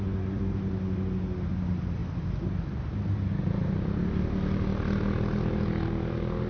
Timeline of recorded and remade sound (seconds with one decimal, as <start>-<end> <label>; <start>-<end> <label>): 0.0-6.5 recorded

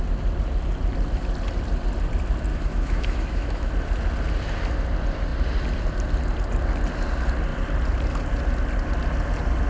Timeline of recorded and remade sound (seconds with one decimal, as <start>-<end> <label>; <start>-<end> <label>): 0.0-2.5 recorded; 2.5-3.7 remade; 3.7-9.7 recorded

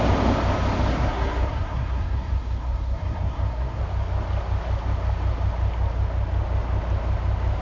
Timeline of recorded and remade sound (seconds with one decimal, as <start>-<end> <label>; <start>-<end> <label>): 0.0-0.9 recorded; 0.9-3.8 remade; 3.8-7.6 recorded

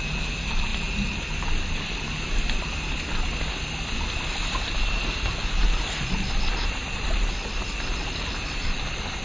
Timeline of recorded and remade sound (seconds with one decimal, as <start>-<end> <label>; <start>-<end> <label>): 0.0-9.2 recorded

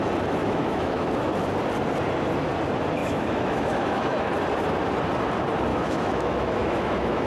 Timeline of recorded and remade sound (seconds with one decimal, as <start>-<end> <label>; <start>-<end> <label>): 0.0-0.4 recorded; 0.4-1.1 remade; 1.1-3.0 recorded; 3.0-4.3 remade; 4.3-5.7 recorded; 5.7-7.3 remade

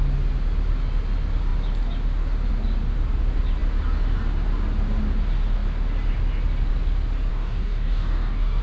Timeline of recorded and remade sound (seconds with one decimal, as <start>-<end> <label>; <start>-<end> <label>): 0.0-7.3 recorded; 7.3-8.6 remade

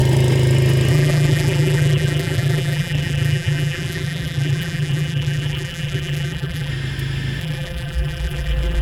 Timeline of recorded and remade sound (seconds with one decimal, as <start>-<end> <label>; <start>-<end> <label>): 0.0-0.9 recorded; 0.9-6.7 remade; 6.7-7.4 recorded; 7.4-8.8 remade

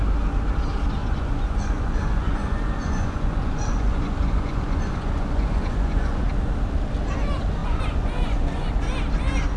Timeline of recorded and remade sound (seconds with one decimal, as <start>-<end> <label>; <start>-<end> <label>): 0.0-1.0 recorded; 1.0-6.2 remade; 6.2-7.6 recorded; 7.6-8.7 remade; 8.7-9.6 recorded